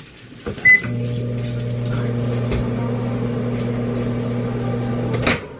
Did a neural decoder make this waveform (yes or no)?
no